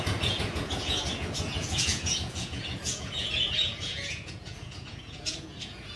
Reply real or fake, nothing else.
fake